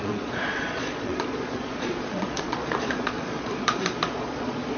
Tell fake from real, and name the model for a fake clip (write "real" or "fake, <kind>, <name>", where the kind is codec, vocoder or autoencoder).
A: fake, vocoder, Vocos